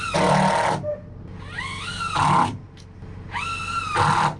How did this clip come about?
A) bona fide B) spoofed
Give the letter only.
A